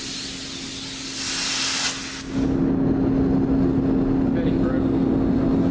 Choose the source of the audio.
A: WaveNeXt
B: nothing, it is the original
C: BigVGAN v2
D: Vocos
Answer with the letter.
B